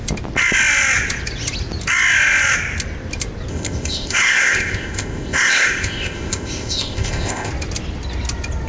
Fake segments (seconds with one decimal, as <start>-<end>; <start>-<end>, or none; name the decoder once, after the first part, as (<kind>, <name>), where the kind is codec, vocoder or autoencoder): 3.5-7.5 (codec, ZipCodec)